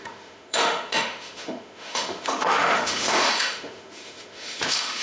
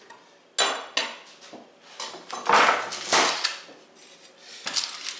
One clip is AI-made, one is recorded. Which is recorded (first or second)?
second